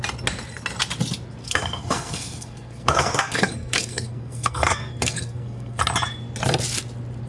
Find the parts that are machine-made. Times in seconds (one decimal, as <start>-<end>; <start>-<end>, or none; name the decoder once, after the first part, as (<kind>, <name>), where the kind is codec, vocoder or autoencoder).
1.4-5.8 (codec, SNAC)